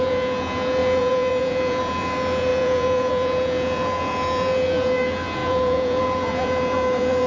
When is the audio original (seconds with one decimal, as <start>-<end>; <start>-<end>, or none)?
none